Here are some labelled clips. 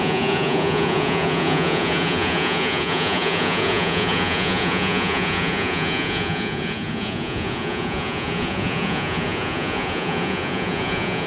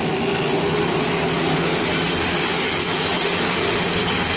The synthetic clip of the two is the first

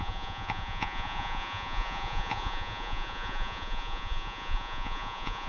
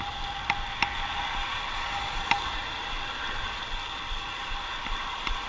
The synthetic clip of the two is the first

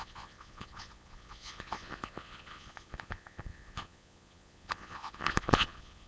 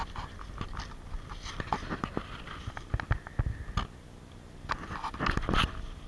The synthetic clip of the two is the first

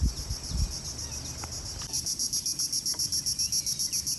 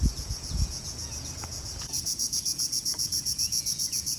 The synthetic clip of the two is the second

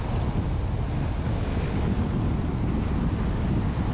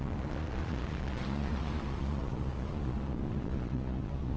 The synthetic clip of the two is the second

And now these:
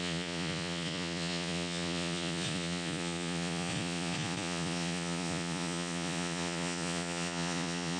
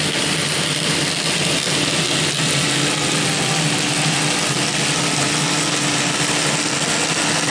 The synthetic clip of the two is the first